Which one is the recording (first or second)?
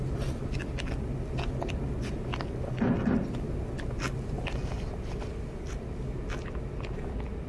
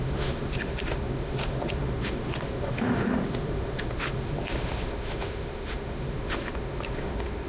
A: first